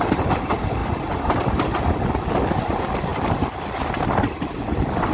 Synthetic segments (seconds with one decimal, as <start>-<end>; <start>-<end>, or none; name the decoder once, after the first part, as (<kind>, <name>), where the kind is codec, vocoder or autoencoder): 0.8-1.7 (vocoder, BigVGAN v2)